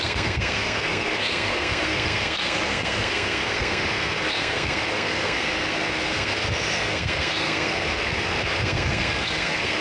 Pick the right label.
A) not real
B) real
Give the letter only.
A